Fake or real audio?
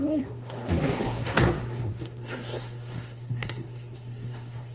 fake